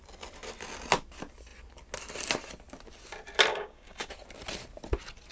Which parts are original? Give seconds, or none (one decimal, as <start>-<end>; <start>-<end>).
0.0-3.5; 4.1-5.3